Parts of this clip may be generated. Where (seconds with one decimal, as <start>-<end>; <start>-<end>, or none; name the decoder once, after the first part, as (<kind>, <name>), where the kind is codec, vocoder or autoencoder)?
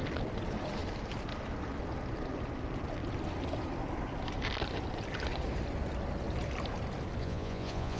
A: 7.2-8.0 (vocoder, Vocos)